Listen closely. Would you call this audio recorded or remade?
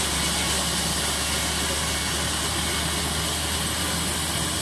recorded